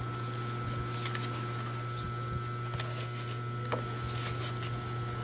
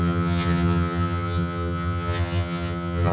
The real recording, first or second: first